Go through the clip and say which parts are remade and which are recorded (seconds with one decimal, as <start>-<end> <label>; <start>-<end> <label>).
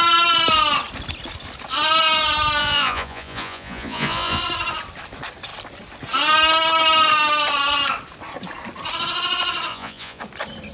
0.0-2.6 recorded; 2.6-4.4 remade; 4.4-9.7 recorded; 9.7-10.2 remade; 10.2-10.7 recorded